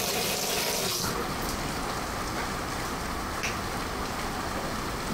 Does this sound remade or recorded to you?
recorded